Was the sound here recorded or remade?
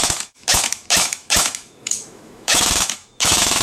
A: remade